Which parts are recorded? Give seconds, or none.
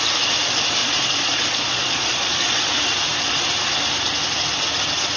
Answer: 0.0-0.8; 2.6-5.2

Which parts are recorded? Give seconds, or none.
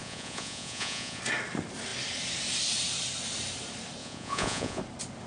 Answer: 1.2-4.0; 4.8-5.3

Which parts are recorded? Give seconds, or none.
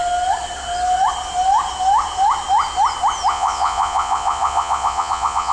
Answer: 0.0-3.3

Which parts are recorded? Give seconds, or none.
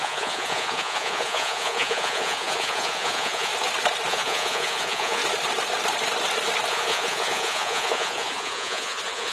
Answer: 3.5-4.1; 5.2-6.7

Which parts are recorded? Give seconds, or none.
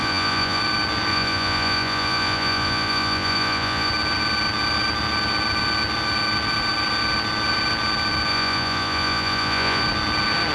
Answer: 0.6-1.1; 3.9-8.3; 9.8-10.5